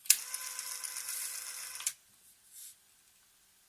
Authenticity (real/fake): real